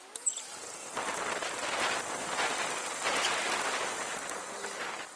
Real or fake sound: real